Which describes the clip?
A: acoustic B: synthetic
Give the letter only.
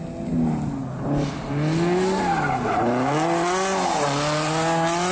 A